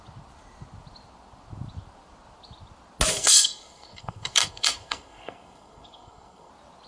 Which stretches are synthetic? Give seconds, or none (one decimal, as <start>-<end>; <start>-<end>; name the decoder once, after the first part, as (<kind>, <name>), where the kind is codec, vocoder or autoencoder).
3.1-6.5 (codec, SNAC)